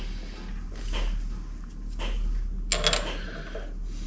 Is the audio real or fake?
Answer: real